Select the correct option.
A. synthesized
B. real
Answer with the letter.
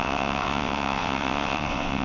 A